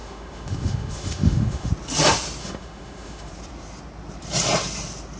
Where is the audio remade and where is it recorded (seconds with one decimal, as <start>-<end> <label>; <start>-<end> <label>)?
0.0-1.7 remade; 1.7-2.4 recorded; 2.4-3.3 remade; 3.3-5.2 recorded

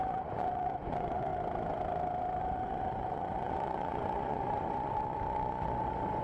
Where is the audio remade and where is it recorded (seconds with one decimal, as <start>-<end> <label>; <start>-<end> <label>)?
0.0-1.3 remade; 1.3-2.4 recorded; 2.4-6.2 remade

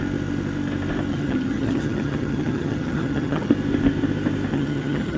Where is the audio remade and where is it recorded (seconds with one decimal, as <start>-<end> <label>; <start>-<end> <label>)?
0.0-1.1 recorded; 1.1-3.5 remade; 3.5-4.5 recorded; 4.5-5.2 remade

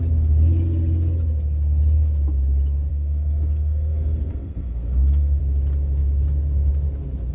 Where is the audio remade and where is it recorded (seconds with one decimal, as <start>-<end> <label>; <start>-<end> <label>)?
0.0-2.9 recorded; 2.9-5.4 remade; 5.4-7.3 recorded

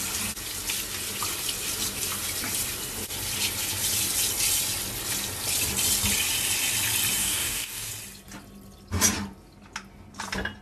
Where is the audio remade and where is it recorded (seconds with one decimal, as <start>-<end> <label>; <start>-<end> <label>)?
0.0-7.2 recorded; 7.2-7.9 remade; 7.9-10.6 recorded

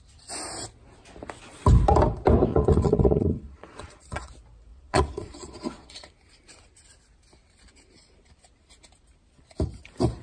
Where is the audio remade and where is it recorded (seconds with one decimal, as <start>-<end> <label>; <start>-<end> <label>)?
0.0-2.5 recorded; 2.5-4.3 remade; 4.3-4.7 recorded; 4.7-6.1 remade; 6.1-10.2 recorded